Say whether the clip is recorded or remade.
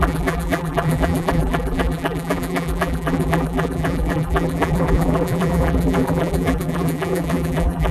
remade